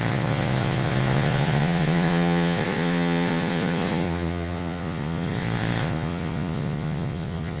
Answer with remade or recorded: remade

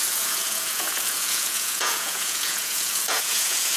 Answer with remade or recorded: remade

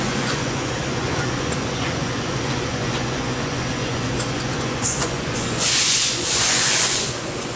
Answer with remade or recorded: remade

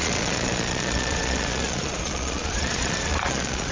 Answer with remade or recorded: remade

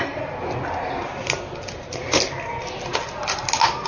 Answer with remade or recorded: recorded